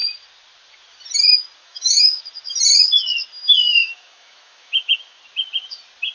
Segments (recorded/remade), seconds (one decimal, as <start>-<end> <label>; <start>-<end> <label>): 0.0-1.6 recorded; 1.6-2.2 remade; 2.2-3.4 recorded; 3.4-5.2 remade; 5.2-6.1 recorded